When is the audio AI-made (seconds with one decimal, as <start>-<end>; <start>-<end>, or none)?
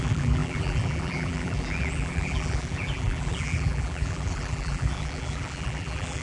0.0-6.2